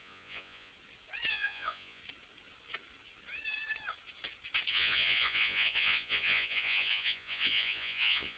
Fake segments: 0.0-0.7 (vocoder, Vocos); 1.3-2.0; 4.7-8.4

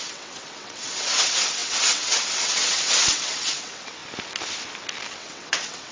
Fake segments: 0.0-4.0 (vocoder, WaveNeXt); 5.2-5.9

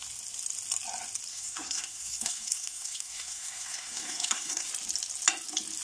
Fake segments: 1.3-4.7 (codec, SNAC)